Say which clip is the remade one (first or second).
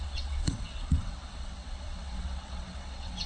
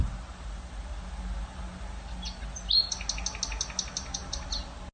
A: first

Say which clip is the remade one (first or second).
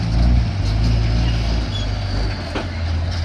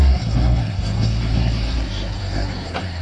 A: second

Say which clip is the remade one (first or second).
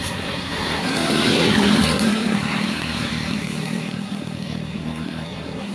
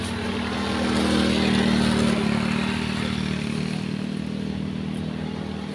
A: first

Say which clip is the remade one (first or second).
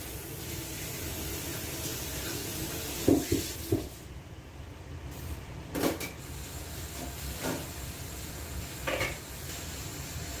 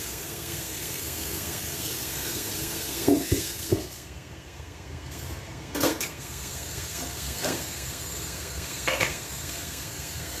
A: second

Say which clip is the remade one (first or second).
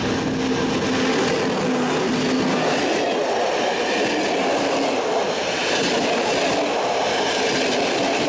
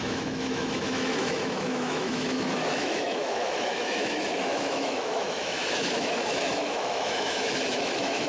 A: second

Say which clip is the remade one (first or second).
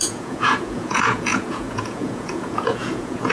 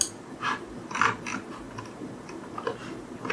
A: first